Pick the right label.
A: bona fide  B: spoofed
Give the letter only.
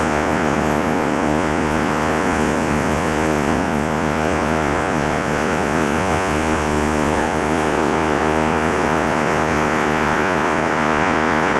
B